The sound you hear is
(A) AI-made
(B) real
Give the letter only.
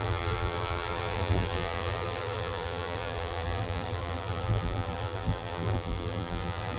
A